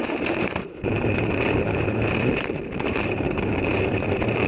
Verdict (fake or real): fake